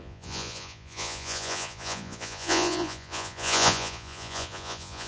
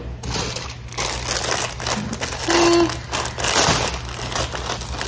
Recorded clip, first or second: second